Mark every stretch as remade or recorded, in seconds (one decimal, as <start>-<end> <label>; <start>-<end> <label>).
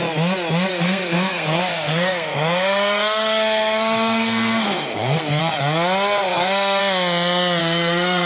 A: 0.0-0.7 recorded; 0.7-5.4 remade; 5.4-6.3 recorded; 6.3-6.8 remade; 6.8-7.6 recorded; 7.6-8.3 remade